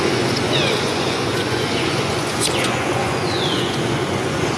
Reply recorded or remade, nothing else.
remade